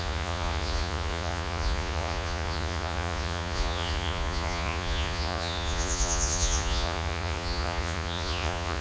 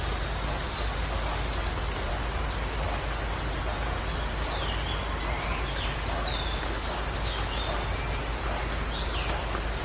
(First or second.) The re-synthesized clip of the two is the first